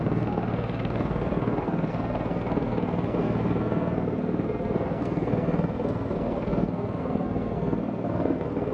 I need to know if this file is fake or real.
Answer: fake